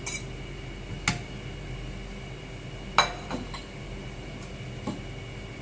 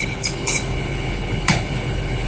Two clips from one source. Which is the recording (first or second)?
first